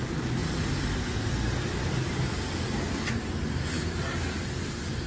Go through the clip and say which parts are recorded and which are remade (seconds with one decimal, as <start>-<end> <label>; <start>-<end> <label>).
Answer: 0.0-0.4 remade; 0.4-2.4 recorded; 2.4-5.1 remade